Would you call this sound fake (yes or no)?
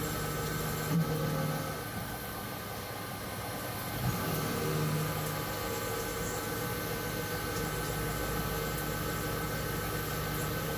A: no